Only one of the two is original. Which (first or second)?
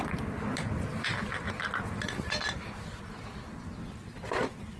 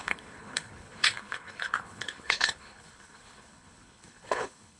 first